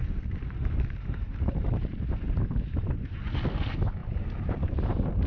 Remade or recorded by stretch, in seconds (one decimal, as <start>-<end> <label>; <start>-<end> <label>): 0.0-3.2 remade; 3.2-4.0 recorded; 4.0-5.3 remade